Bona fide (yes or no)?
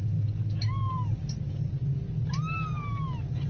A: yes